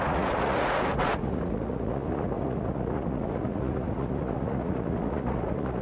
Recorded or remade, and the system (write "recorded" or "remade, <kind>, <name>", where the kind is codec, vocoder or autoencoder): remade, vocoder, Vocos